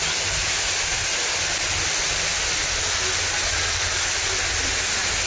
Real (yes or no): yes